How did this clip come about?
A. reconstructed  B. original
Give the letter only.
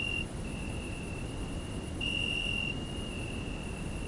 B